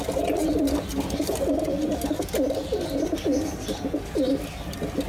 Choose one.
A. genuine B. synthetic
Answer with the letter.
A